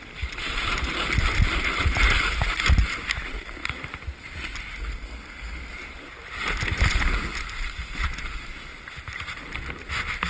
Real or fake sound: real